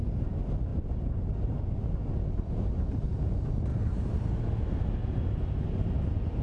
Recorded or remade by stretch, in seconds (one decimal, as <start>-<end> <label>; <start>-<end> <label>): 0.0-0.7 recorded; 0.7-1.6 remade; 1.6-3.7 recorded; 3.7-4.5 remade; 4.5-6.4 recorded